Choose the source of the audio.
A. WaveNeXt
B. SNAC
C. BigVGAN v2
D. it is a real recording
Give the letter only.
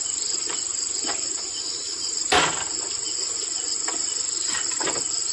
D